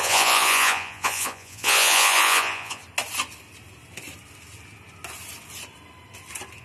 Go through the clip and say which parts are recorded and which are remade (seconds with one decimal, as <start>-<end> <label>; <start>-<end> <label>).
0.0-2.8 remade; 2.8-6.6 recorded